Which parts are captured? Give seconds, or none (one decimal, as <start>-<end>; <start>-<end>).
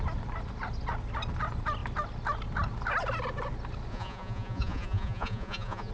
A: 0.0-3.9